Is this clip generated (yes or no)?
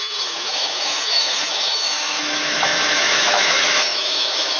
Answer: yes